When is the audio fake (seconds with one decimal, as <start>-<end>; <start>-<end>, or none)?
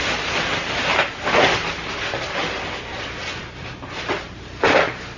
none